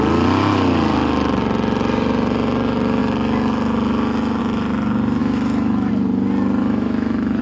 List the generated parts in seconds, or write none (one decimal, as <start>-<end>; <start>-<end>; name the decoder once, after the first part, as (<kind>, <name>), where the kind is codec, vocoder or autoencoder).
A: 5.2-5.9 (autoencoder, DAC-VAE); 6.6-7.4